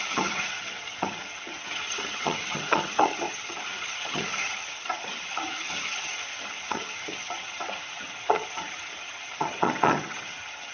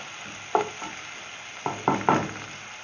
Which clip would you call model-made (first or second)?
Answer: first